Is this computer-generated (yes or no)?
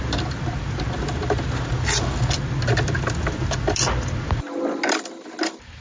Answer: no